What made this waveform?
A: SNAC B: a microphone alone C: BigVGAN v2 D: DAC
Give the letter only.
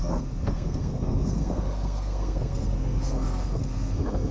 A